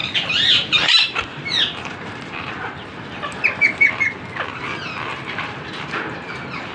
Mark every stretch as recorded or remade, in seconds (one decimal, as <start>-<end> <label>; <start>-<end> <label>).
0.0-4.0 remade; 4.0-5.1 recorded; 5.1-5.7 remade; 5.7-6.7 recorded